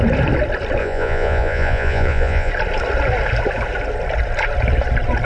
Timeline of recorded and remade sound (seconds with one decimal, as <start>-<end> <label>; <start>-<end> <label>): 0.0-0.8 recorded; 0.8-2.5 remade; 2.5-5.2 recorded